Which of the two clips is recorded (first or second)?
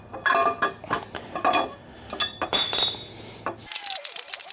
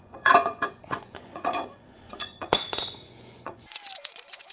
first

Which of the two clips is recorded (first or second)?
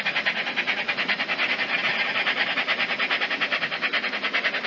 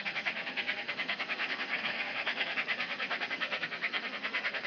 first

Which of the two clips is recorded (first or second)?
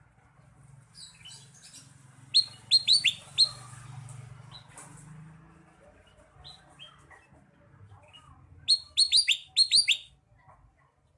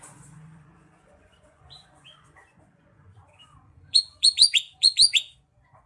first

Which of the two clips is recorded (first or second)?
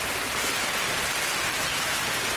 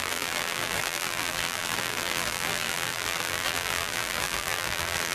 first